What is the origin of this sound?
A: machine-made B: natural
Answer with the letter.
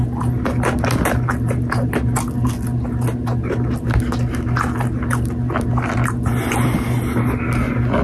B